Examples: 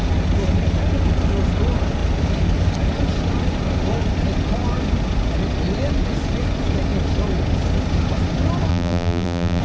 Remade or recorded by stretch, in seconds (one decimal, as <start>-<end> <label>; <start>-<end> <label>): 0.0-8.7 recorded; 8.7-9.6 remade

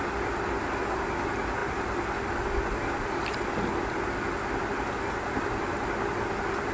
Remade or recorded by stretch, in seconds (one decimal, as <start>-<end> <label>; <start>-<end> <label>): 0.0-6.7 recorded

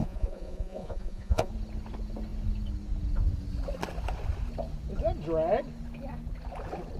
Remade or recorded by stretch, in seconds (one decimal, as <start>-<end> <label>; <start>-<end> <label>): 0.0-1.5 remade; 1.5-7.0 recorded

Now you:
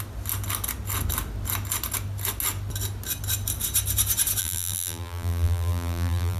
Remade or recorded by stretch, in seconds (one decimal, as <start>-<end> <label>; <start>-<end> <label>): 0.0-4.4 recorded; 4.4-6.4 remade

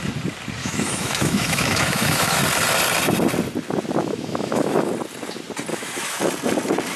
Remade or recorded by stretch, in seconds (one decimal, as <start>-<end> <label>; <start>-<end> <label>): 0.0-0.6 recorded; 0.6-2.4 remade; 2.4-4.0 recorded; 4.0-4.9 remade; 4.9-5.7 recorded; 5.7-6.2 remade; 6.2-7.0 recorded